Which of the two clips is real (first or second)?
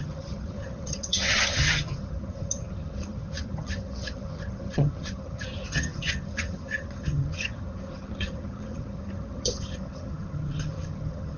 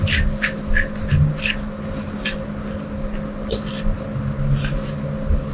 second